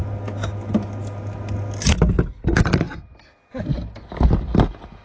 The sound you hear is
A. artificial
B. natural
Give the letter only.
B